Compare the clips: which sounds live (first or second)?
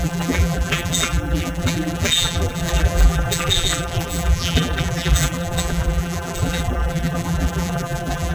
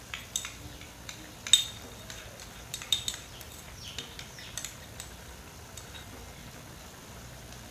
second